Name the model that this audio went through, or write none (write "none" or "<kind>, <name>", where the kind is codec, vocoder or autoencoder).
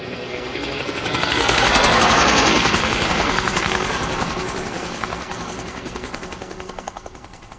codec, SNAC